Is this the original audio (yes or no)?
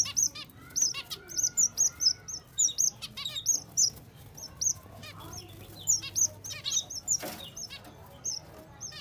yes